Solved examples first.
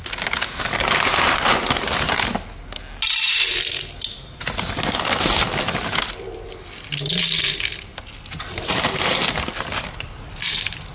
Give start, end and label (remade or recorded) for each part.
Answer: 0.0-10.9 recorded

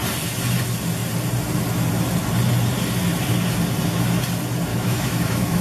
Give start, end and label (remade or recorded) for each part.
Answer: 0.0-4.7 recorded; 4.7-5.6 remade

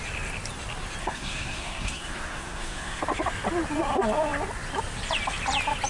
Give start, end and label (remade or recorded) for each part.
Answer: 0.0-1.0 recorded; 1.0-3.0 remade; 3.0-5.9 recorded